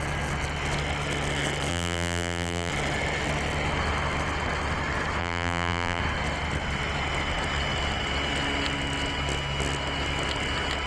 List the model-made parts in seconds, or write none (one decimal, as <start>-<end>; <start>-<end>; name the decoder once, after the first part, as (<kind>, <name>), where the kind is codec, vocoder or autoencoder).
1.7-2.7 (vocoder, BigVGAN v2); 5.2-6.0